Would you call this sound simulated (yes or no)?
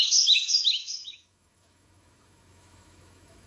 yes